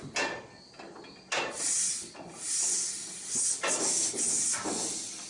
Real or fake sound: real